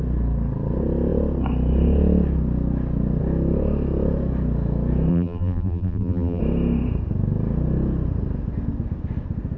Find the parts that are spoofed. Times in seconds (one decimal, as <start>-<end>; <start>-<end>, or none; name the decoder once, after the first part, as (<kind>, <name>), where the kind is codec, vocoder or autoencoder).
5.1-6.4 (vocoder, BigVGAN v2)